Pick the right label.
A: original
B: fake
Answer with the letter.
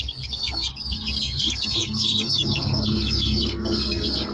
B